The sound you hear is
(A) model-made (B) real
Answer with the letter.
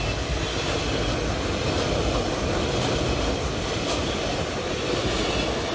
B